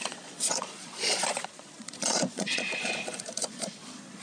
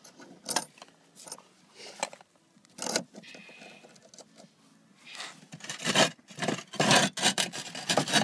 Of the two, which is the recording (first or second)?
second